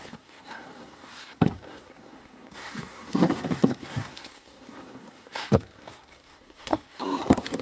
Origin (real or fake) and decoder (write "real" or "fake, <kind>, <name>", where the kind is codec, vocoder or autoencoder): fake, codec, SNAC